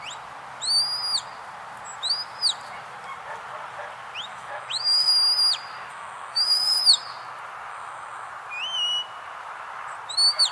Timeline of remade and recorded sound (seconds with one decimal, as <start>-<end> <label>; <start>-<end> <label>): 0.0-4.3 recorded; 4.3-5.1 remade; 5.1-5.9 recorded; 5.9-6.8 remade; 6.8-7.7 recorded; 7.7-8.3 remade; 8.3-10.5 recorded